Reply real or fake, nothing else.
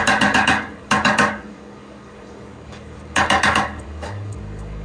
fake